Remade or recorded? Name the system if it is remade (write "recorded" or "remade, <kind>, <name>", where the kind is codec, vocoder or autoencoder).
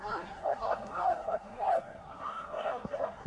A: remade, codec, SNAC